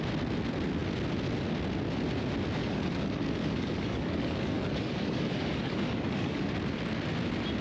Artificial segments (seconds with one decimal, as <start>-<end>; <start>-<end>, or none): 2.6-6.5